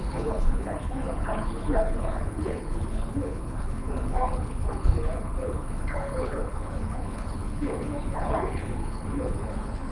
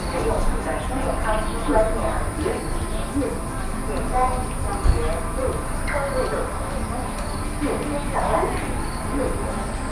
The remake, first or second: first